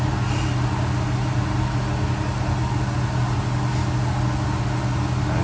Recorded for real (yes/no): yes